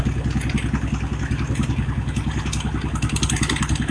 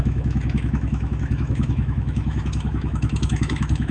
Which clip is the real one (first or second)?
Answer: first